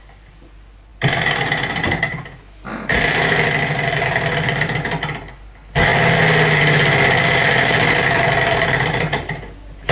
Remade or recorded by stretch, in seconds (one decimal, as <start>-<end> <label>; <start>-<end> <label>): 0.0-9.9 recorded